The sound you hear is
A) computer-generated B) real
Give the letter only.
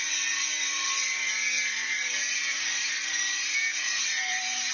A